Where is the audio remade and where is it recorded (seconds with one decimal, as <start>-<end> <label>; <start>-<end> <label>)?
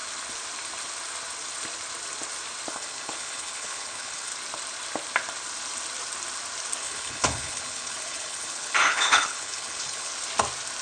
0.0-2.7 recorded; 2.7-4.3 remade; 4.3-6.8 recorded; 6.8-10.1 remade; 10.1-10.8 recorded